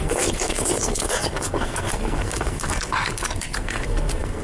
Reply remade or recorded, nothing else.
remade